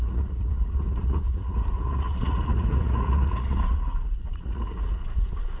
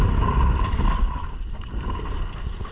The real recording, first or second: second